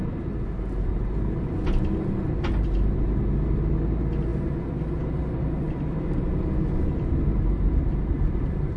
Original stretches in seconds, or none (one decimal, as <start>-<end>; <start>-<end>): 0.0-8.8

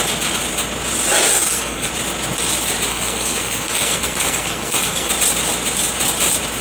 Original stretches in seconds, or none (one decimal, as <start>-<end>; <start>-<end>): 0.0-1.3; 1.9-2.9; 5.1-6.6

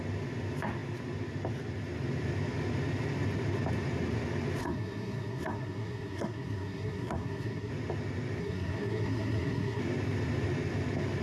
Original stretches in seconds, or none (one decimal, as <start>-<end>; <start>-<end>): 0.0-4.6; 7.7-8.4; 9.8-11.2

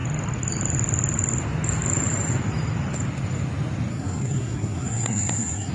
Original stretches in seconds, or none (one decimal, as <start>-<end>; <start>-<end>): 0.0-3.9

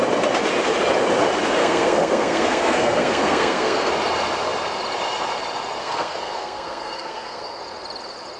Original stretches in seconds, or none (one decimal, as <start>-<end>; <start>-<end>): 0.0-1.6; 3.9-5.8; 7.6-8.4